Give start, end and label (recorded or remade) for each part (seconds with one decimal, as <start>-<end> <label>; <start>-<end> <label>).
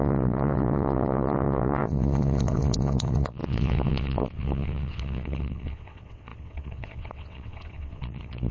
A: 0.0-8.5 remade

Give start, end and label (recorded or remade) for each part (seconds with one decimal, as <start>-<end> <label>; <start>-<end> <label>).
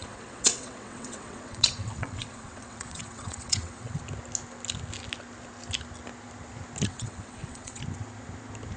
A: 0.0-4.0 remade; 4.0-6.9 recorded; 6.9-7.8 remade; 7.8-8.8 recorded